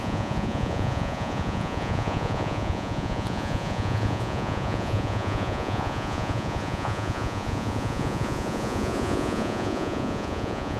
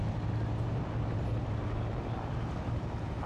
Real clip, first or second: second